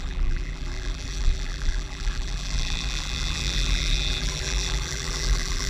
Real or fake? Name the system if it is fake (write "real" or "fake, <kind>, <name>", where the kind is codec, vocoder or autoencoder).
fake, vocoder, BigVGAN v2